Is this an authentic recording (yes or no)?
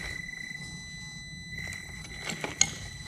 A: yes